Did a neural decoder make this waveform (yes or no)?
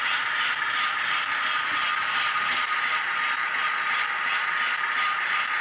no